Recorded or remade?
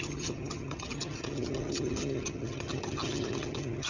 remade